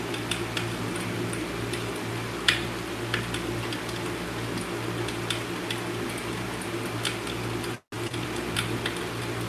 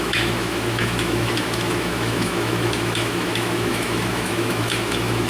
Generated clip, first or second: second